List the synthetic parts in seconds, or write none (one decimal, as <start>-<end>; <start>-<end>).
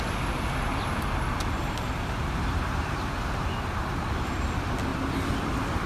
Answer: 1.6-3.8